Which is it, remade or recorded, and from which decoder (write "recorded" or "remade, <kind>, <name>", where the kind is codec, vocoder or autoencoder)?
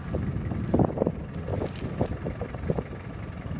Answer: recorded